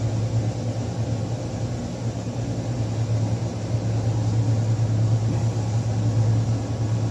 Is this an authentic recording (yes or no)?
yes